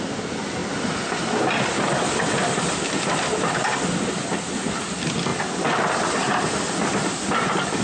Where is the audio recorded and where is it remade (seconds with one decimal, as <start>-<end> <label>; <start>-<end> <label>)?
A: 0.0-7.8 recorded